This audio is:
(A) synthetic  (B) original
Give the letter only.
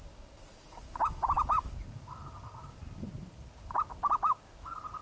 B